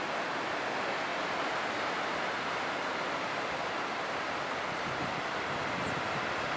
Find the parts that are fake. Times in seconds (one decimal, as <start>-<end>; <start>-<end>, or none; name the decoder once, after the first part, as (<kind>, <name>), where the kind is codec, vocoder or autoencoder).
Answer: 1.1-5.1 (vocoder, BigVGAN v2)

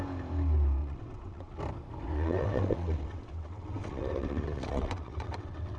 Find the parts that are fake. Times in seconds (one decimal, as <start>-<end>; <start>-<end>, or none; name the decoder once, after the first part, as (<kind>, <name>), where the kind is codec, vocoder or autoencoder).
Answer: 0.8-1.6 (vocoder, WaveNeXt); 2.1-5.8

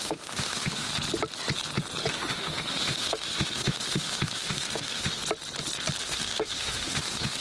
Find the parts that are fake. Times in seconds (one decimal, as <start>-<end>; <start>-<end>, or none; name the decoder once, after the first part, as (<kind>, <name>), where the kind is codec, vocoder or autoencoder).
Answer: 0.0-0.9 (autoencoder, DAC-VAE); 2.1-5.2; 6.0-7.4

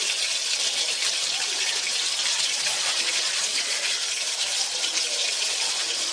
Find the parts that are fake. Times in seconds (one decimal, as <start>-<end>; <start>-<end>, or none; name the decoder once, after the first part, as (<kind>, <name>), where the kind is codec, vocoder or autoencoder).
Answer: 0.0-0.4 (vocoder, Vocos); 2.3-4.0; 5.4-6.1

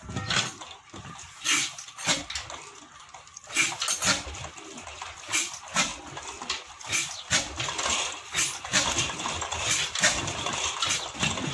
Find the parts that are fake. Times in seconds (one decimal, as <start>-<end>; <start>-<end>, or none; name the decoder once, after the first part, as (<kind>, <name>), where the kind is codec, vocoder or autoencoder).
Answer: none